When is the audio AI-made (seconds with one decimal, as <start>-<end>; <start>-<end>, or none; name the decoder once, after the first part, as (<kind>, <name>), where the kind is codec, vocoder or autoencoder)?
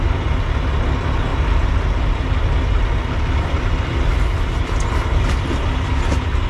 1.3-5.2 (vocoder, BigVGAN v2)